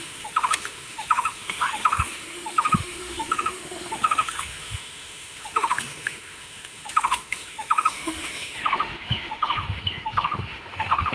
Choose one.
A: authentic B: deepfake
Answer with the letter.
B